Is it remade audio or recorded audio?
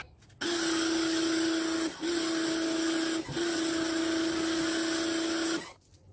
recorded